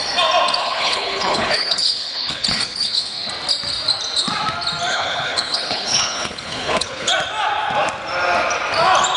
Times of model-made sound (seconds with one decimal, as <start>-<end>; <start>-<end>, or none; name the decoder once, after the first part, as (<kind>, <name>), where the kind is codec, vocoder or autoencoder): 0.6-3.3 (codec, HILCodec); 4.9-7.1